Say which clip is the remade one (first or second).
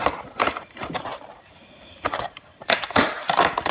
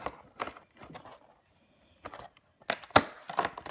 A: first